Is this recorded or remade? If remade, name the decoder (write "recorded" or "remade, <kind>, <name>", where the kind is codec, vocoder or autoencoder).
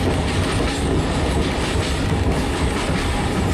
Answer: recorded